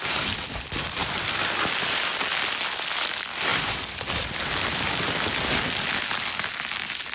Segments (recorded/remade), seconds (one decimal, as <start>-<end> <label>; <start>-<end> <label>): 0.0-7.1 recorded